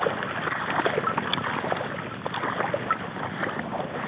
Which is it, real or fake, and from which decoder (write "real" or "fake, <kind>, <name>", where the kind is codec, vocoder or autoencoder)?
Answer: real